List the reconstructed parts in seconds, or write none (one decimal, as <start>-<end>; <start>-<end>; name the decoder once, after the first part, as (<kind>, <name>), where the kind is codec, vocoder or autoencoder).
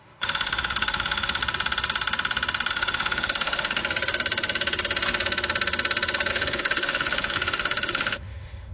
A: 0.0-1.4 (autoencoder, DAC-VAE); 2.7-3.8; 6.3-8.7